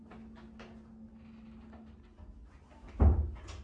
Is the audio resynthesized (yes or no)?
no